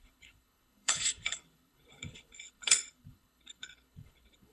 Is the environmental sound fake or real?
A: fake